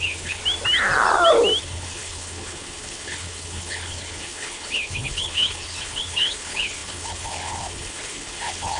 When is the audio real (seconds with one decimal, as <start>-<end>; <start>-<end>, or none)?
0.4-1.6